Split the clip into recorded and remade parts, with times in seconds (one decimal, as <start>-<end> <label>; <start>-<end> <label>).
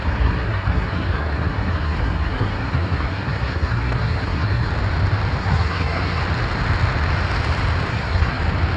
0.0-4.7 remade; 4.7-5.4 recorded; 5.4-6.2 remade; 6.2-7.9 recorded; 7.9-8.4 remade; 8.4-8.8 recorded